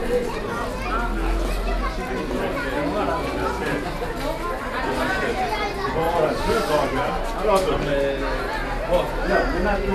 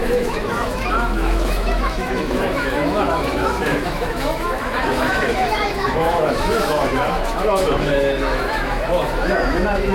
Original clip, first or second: first